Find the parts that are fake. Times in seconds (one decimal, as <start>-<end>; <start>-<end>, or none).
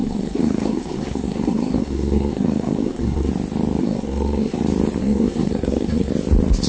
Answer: 0.0-3.3; 3.8-4.6; 5.0-6.1